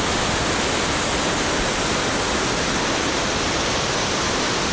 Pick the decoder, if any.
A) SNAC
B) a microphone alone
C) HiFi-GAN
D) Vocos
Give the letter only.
B